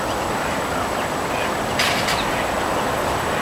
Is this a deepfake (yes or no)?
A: no